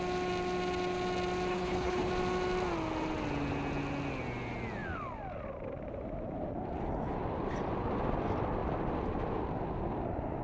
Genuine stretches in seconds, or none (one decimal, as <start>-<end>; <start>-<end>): 0.0-1.5; 2.1-10.4